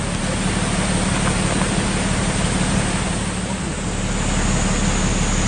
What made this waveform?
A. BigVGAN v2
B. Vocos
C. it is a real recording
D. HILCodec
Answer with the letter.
C